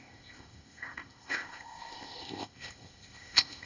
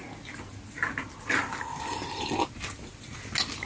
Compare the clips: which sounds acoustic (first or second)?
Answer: second